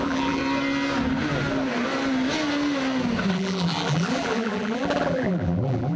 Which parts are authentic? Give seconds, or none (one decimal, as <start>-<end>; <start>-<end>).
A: 0.4-3.3